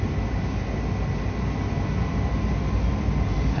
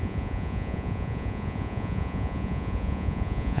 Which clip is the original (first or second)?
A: first